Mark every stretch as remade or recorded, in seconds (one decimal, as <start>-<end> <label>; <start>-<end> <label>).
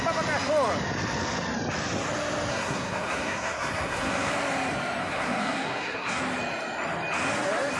0.0-2.5 recorded; 2.5-4.3 remade; 4.3-5.0 recorded; 5.0-6.2 remade; 6.2-7.8 recorded